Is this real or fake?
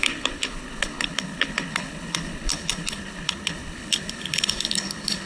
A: fake